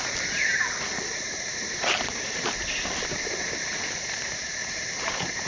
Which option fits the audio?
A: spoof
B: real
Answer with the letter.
B